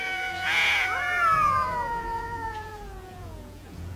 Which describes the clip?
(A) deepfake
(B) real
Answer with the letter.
A